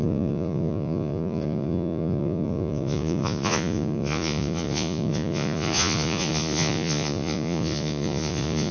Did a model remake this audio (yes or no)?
yes